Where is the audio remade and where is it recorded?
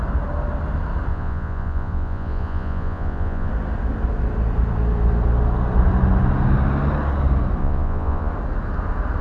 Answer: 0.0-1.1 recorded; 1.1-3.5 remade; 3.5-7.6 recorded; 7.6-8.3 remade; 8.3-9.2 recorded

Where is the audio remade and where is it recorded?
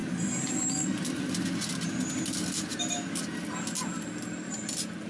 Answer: 0.0-5.1 recorded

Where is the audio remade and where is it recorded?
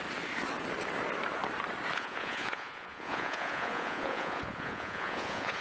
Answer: 0.0-1.9 recorded; 1.9-5.6 remade